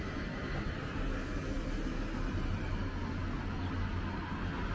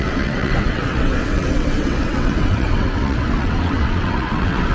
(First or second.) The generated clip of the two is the second